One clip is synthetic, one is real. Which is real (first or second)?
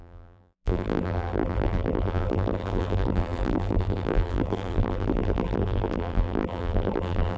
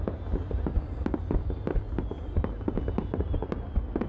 second